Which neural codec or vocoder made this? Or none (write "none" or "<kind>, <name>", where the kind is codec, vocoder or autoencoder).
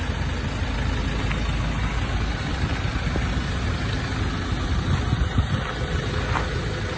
none